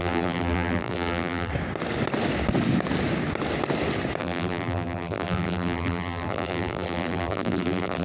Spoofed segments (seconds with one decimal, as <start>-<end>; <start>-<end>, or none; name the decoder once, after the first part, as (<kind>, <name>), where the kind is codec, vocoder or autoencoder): 0.0-1.5 (vocoder, BigVGAN v2); 4.2-8.0